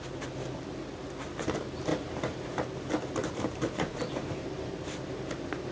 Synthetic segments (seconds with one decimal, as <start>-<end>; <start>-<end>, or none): 1.9-2.6; 3.2-5.1